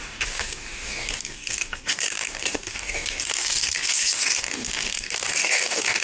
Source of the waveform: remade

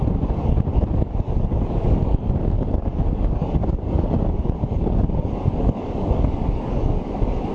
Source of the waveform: remade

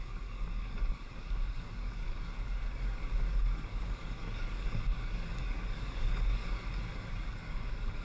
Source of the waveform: remade